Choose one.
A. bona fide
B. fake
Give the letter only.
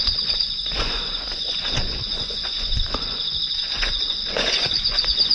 B